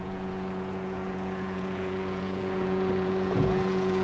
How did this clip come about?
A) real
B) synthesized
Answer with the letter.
B